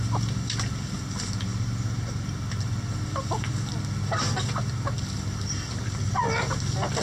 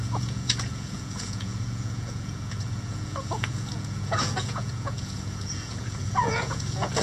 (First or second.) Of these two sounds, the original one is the first